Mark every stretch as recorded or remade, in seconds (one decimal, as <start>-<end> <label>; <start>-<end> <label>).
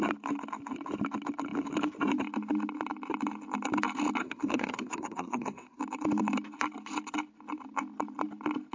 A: 0.0-4.2 recorded; 4.2-5.8 remade; 5.8-8.7 recorded